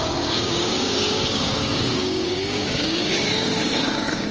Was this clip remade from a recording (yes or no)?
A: yes